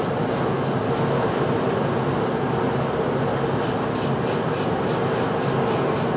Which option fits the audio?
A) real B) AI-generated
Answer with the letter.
A